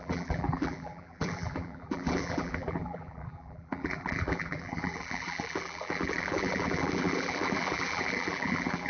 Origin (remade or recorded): remade